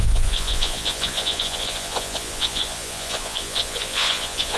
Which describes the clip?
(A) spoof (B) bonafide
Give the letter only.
A